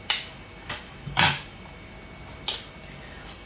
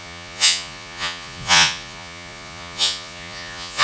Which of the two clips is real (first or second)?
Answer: first